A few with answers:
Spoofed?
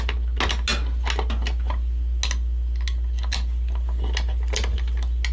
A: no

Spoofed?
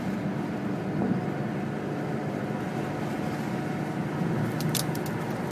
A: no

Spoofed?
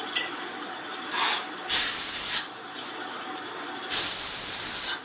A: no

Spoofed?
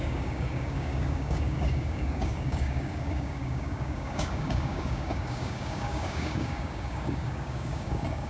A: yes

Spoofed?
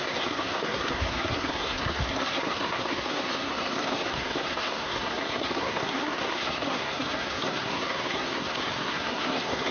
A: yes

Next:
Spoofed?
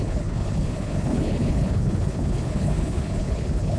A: yes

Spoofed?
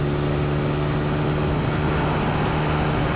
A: no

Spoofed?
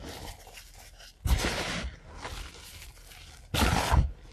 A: no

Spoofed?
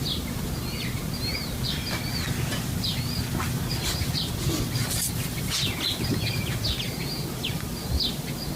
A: no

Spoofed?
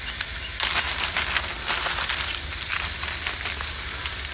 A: no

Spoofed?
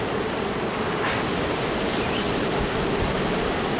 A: yes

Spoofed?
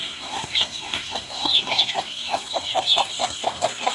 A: yes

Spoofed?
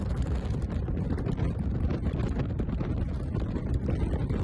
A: no